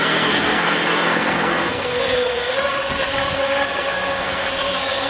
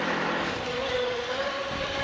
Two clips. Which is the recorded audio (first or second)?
second